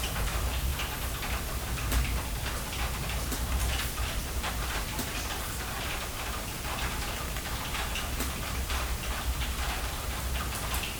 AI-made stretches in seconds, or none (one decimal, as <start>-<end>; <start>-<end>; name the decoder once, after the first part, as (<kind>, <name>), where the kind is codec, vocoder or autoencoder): 0.0-0.7 (vocoder, BigVGAN v2); 3.0-11.0